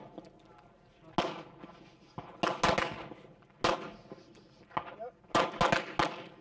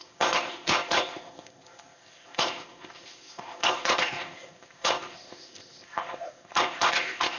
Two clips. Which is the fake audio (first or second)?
second